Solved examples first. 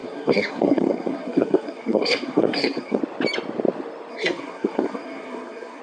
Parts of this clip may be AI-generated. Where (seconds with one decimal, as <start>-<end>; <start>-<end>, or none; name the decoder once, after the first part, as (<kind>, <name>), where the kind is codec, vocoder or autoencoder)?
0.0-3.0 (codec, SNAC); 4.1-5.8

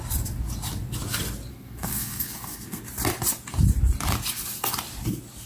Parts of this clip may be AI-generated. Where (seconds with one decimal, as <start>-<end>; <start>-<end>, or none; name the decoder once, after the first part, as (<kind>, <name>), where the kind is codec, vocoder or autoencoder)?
1.5-2.8 (codec, SNAC)

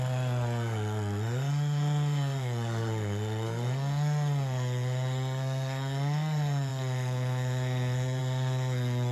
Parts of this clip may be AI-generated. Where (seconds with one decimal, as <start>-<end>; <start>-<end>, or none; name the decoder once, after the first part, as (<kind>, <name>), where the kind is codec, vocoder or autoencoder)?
0.0-9.1 (codec, SNAC)

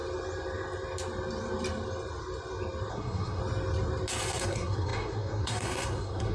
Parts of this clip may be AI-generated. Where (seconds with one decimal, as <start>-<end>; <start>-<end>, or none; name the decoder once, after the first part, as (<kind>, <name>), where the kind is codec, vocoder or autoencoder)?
2.9-3.4 (codec, SNAC); 4.4-6.3